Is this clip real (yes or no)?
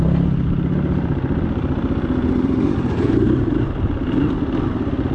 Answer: yes